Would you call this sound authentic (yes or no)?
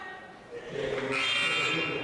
yes